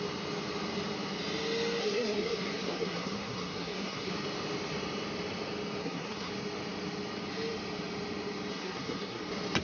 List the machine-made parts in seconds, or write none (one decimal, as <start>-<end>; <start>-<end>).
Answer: 1.8-4.1; 5.8-6.3; 8.5-9.2